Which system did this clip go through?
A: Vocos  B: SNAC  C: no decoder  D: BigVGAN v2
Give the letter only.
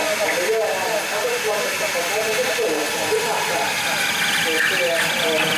C